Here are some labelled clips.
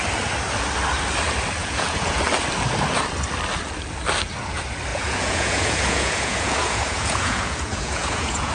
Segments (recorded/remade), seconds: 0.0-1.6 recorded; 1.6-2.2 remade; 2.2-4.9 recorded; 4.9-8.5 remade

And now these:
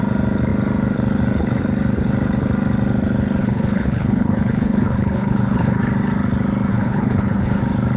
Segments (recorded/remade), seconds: 0.0-3.4 recorded; 3.4-5.8 remade; 5.8-6.7 recorded; 6.7-7.6 remade; 7.6-8.0 recorded

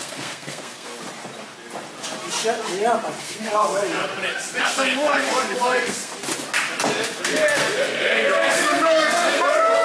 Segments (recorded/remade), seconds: 0.0-0.9 remade; 0.9-3.2 recorded; 3.2-4.1 remade; 4.1-4.6 recorded; 4.6-6.1 remade; 6.1-7.2 recorded; 7.2-9.8 remade

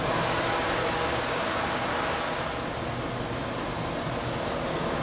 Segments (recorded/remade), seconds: 0.0-1.9 remade; 1.9-4.5 recorded; 4.5-5.0 remade

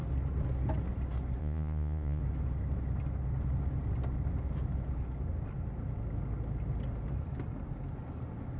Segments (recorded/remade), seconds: 0.0-1.4 recorded; 1.4-2.2 remade; 2.2-8.6 recorded